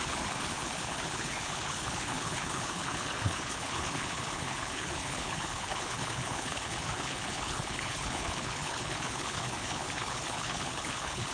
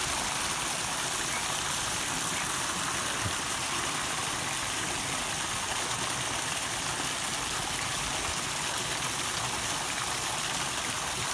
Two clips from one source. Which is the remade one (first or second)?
first